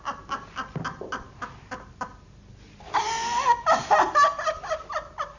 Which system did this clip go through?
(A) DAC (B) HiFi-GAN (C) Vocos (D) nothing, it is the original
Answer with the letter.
D